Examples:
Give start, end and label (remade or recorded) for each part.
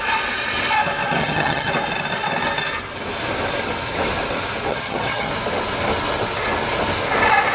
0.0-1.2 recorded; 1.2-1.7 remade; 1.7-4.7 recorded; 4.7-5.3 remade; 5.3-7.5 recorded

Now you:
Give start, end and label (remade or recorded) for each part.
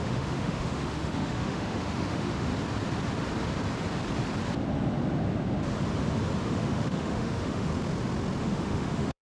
0.0-2.5 remade; 2.5-6.4 recorded; 6.4-7.7 remade; 7.7-8.4 recorded; 8.4-9.2 remade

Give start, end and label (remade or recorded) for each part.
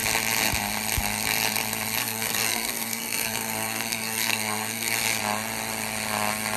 0.0-2.0 recorded; 2.0-5.2 remade; 5.2-6.6 recorded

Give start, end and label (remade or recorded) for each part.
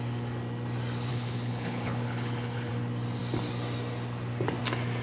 0.0-1.1 recorded; 1.1-2.7 remade; 2.7-5.0 recorded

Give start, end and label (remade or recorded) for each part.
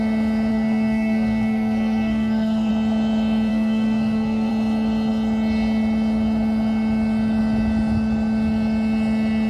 0.0-0.5 recorded; 0.5-2.7 remade; 2.7-3.5 recorded; 3.5-4.5 remade; 4.5-9.5 recorded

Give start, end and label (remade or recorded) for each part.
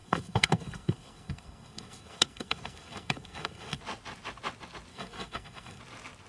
0.0-3.8 remade; 3.8-4.9 recorded; 4.9-5.8 remade; 5.8-6.3 recorded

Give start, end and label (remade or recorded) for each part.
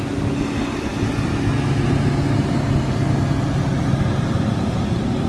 0.0-5.3 recorded